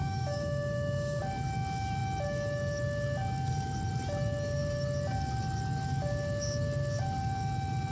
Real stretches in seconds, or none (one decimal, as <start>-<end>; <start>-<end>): 1.2-7.9